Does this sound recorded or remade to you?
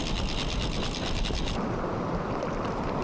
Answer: recorded